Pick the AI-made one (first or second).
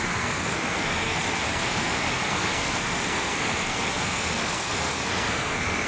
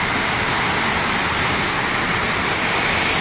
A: first